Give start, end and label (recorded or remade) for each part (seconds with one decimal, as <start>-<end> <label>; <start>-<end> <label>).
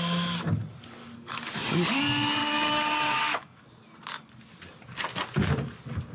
0.0-1.0 recorded; 1.0-2.0 remade; 2.0-2.4 recorded; 2.4-3.6 remade; 3.6-6.1 recorded